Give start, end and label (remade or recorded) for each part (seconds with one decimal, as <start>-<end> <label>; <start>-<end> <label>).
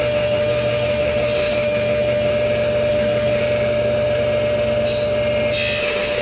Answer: 0.0-2.3 remade; 2.3-2.9 recorded; 2.9-3.4 remade; 3.4-5.8 recorded; 5.8-6.2 remade